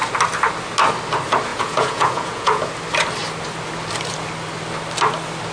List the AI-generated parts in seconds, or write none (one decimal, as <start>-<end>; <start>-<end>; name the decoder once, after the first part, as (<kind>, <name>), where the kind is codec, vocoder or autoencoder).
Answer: 1.5-2.7 (vocoder, Vocos)